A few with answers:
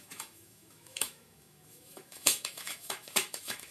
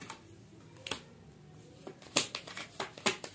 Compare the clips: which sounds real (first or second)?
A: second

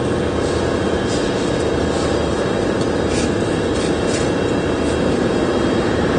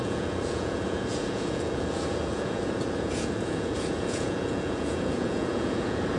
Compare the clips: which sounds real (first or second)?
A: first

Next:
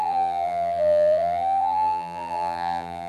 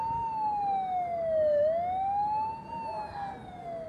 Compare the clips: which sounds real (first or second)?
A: second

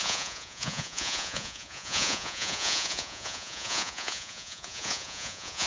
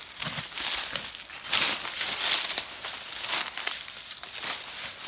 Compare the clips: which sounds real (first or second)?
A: second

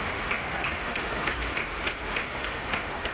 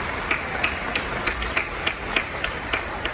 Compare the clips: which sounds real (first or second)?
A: second